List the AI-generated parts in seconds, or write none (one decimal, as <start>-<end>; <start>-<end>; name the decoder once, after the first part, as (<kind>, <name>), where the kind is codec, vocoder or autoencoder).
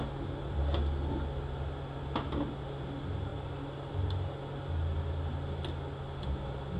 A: none